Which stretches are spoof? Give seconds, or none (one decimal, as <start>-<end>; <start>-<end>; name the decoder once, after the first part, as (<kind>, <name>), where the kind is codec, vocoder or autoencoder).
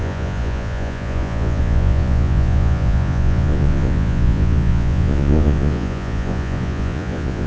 0.0-7.5 (vocoder, Vocos)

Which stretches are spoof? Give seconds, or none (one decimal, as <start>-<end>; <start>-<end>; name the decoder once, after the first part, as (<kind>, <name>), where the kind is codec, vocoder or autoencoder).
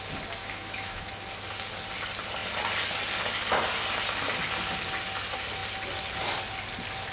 0.4-1.1 (autoencoder, DAC-VAE)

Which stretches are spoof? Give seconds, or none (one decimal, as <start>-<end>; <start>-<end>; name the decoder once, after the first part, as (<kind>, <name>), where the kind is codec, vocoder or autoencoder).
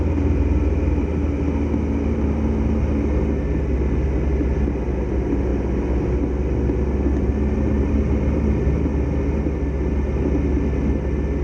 none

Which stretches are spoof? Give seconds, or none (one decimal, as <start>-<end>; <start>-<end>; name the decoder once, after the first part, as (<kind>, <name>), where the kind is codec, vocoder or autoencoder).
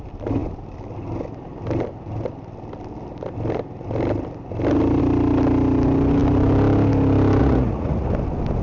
7.4-8.1 (vocoder, Vocos)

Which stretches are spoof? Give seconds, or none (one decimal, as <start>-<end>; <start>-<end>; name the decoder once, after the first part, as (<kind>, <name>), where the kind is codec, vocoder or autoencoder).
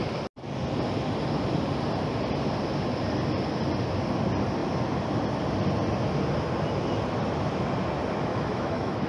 8.3-9.1 (autoencoder, DAC-VAE)